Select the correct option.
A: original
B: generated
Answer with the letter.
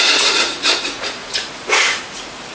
B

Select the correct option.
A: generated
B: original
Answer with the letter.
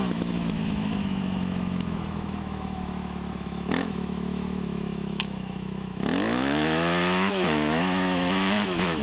A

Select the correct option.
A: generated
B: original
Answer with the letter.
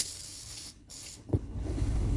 A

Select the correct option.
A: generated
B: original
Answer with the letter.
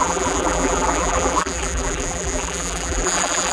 A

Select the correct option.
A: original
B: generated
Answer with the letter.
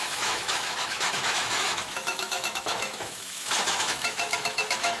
B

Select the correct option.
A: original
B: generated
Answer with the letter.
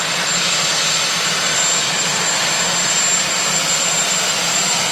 A